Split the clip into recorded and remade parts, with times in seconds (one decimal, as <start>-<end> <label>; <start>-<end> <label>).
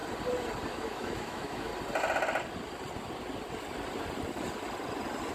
0.0-0.7 recorded; 0.7-1.7 remade; 1.7-5.3 recorded